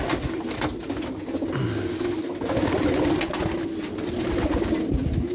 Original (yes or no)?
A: yes